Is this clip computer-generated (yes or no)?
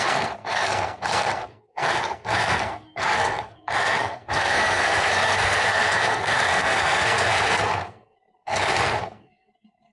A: yes